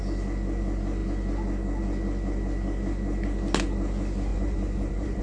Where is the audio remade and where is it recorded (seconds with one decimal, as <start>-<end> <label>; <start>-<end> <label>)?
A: 0.0-4.3 recorded; 4.3-5.2 remade